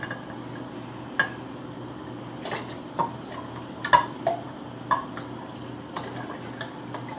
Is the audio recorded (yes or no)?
yes